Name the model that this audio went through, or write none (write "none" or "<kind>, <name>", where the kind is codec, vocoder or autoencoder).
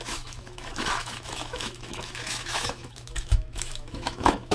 autoencoder, DAC-VAE